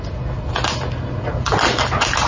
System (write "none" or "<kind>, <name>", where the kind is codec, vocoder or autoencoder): none